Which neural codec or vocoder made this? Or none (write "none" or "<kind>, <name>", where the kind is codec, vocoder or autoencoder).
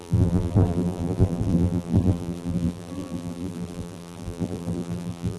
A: vocoder, BigVGAN v2